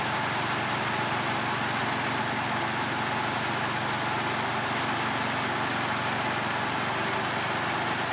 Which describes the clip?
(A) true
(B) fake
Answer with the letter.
A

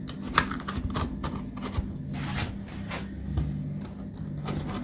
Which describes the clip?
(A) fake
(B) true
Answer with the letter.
B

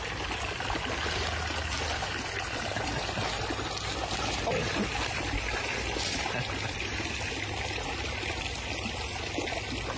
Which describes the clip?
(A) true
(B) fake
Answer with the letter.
A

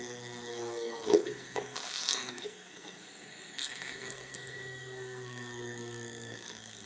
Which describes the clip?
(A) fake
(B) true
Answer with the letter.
A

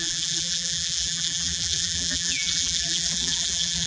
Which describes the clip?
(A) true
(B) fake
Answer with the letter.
B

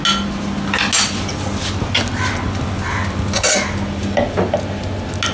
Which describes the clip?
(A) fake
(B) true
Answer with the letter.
B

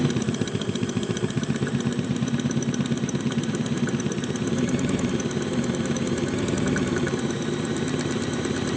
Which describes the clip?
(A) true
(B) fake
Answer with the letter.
B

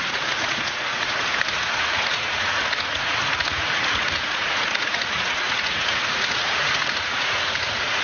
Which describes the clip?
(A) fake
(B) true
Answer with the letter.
A